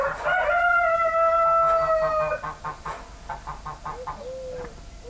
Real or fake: real